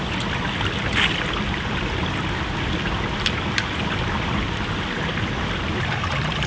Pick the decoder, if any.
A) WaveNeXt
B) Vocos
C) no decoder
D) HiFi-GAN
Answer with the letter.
C